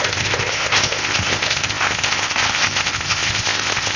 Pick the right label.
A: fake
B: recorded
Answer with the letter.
A